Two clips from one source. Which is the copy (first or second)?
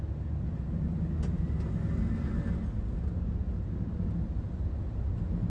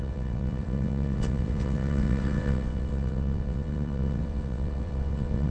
second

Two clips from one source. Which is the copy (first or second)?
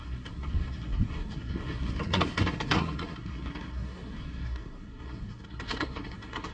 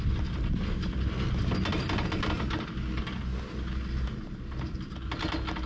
first